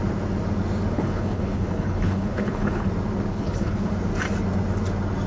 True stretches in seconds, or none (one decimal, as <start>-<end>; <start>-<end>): 0.0-0.9; 2.9-3.3; 3.9-5.3